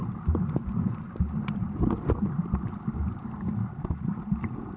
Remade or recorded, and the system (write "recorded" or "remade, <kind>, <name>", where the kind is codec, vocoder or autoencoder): recorded